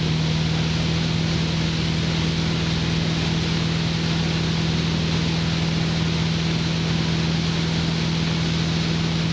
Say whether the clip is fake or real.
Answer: real